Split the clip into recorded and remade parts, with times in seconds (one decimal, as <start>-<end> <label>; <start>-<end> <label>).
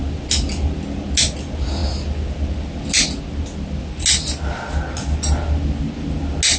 0.0-6.6 recorded